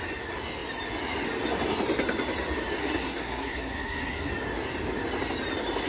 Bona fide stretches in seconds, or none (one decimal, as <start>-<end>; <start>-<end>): 0.0-2.8; 4.3-5.9